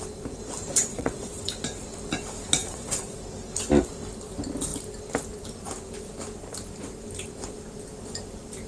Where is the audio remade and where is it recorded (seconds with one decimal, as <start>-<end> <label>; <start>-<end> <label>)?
0.0-0.9 recorded; 0.9-1.5 remade; 1.5-2.6 recorded; 2.6-3.2 remade; 3.2-8.7 recorded